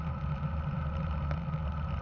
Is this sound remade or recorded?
recorded